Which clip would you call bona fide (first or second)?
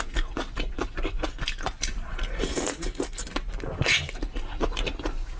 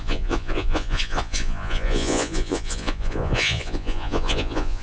first